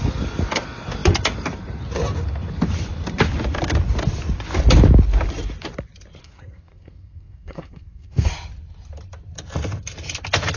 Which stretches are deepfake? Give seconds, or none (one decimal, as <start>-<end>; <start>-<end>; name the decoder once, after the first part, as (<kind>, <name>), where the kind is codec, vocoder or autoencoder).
6.2-8.3 (codec, SNAC)